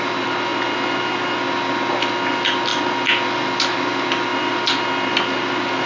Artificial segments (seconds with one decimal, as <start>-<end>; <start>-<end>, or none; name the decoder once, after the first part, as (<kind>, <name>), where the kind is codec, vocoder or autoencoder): none